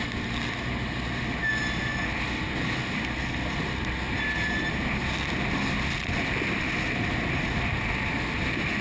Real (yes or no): yes